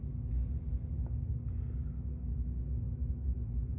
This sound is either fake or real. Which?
real